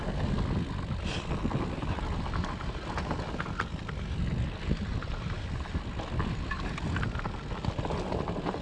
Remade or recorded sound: recorded